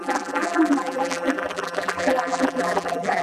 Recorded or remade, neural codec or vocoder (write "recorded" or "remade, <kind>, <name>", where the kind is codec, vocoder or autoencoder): remade, vocoder, BigVGAN v2